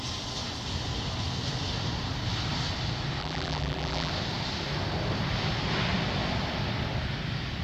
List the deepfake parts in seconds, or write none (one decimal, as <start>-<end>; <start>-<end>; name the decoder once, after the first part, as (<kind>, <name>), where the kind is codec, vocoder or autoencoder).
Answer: 3.2-4.1 (vocoder, BigVGAN v2)